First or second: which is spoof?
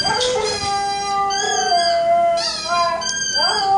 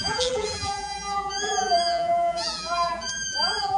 second